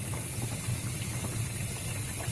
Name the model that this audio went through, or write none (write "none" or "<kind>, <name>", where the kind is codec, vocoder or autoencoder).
none